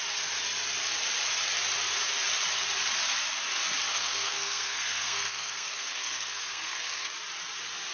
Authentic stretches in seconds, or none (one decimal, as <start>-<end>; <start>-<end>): 0.0-3.9; 7.1-7.9